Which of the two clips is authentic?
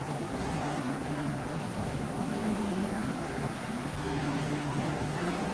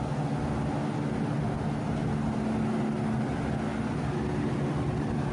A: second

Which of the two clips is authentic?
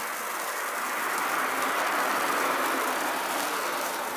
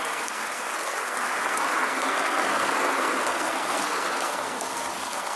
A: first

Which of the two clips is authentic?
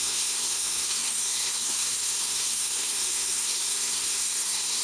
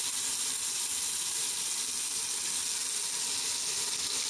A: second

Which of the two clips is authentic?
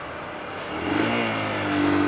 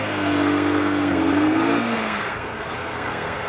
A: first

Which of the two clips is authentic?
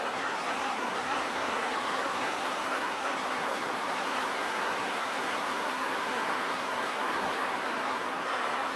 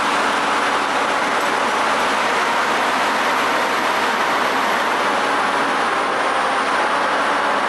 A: second